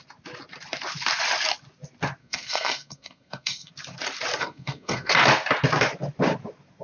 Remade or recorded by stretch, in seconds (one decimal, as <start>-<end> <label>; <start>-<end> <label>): 0.0-2.2 recorded; 2.2-3.7 remade; 3.7-4.4 recorded; 4.4-5.1 remade; 5.1-6.8 recorded